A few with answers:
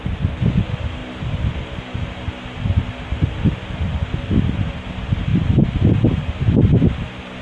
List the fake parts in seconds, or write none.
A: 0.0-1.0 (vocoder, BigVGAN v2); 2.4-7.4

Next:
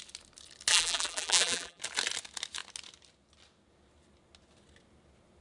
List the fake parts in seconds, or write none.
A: 0.7-1.8 (vocoder, BigVGAN v2)

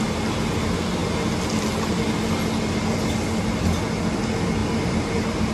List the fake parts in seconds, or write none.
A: 4.6-5.5 (vocoder, BigVGAN v2)

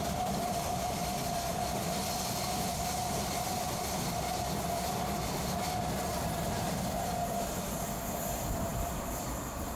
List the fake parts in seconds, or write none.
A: 1.5-5.4 (vocoder, BigVGAN v2); 6.1-7.2; 8.7-9.7